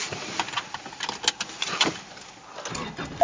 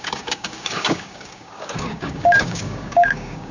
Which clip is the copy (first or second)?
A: second